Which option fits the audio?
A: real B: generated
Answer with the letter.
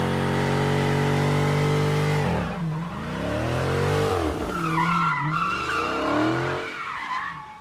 A